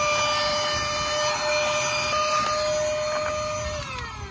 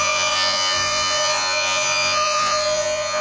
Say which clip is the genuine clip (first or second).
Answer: first